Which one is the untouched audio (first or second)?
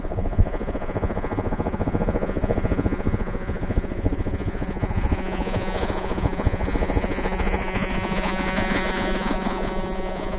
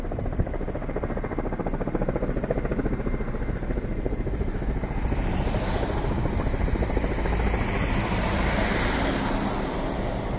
second